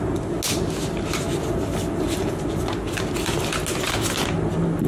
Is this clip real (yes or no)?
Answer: yes